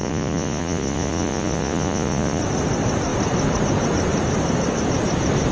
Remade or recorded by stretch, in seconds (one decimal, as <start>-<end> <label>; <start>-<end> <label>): 0.0-2.4 remade; 2.4-5.5 recorded